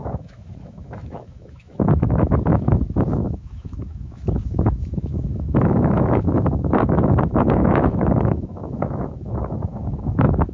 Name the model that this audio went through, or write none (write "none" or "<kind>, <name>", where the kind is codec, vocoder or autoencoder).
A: autoencoder, DAC-VAE